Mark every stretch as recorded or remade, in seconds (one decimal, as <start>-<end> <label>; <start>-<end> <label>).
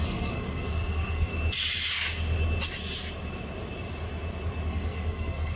0.0-1.3 remade; 1.3-4.7 recorded; 4.7-5.6 remade